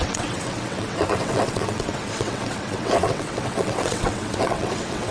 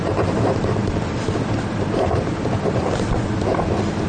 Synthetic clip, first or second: first